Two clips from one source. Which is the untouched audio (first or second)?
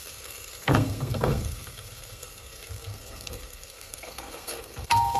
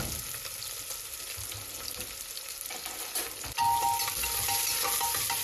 second